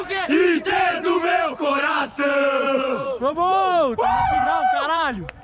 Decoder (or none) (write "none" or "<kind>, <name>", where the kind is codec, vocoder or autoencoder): vocoder, Vocos